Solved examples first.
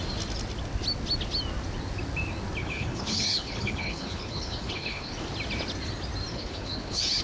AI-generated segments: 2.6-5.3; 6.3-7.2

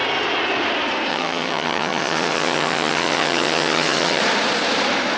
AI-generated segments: 1.1-4.2

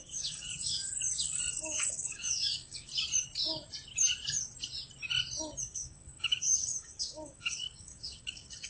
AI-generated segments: 0.0-0.8; 1.5-2.9; 5.6-8.7

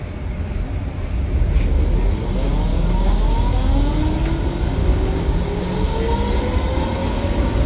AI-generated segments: 2.7-3.7; 4.8-5.7; 7.0-7.7

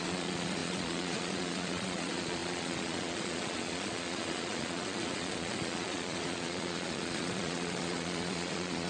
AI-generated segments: 0.0-8.9

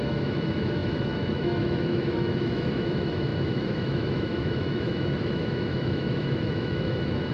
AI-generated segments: 0.0-7.3

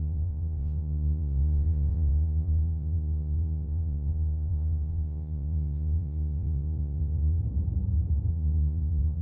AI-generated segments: 0.0-7.4; 8.3-9.2

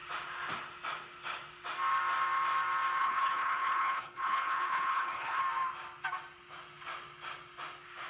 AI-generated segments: 3.0-5.4